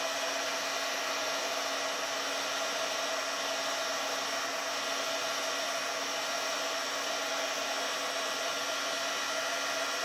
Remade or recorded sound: recorded